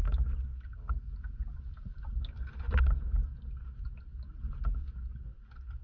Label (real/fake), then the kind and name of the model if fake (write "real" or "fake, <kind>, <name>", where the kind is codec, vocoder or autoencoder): real